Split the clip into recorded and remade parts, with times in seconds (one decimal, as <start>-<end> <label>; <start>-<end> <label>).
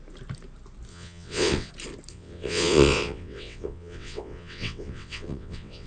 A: 0.0-0.9 recorded; 0.9-1.7 remade; 1.7-2.1 recorded; 2.1-5.9 remade